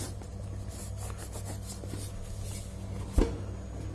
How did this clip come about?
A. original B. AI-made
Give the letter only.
A